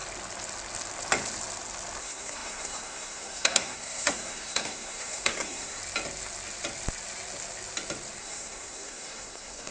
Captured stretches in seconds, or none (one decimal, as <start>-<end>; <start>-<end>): 0.0-2.0; 5.8-8.2